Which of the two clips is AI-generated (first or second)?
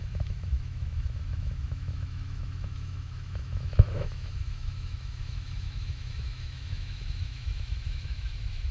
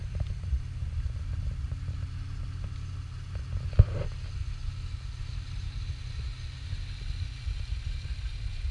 first